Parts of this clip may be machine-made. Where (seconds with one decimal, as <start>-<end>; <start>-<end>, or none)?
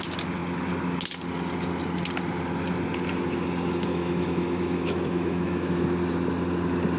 3.9-5.8